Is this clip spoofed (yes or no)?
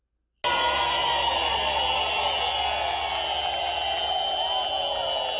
no